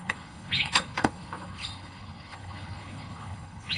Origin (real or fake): fake